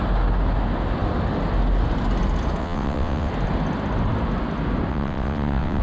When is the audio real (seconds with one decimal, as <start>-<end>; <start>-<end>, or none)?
0.0-2.6; 3.3-4.9